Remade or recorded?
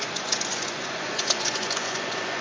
remade